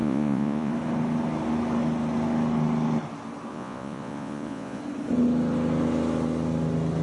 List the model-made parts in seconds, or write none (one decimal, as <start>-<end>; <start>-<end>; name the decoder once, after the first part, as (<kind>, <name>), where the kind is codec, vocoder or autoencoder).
0.0-0.7 (vocoder, Vocos); 3.5-4.8